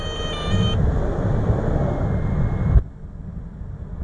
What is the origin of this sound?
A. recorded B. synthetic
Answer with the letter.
A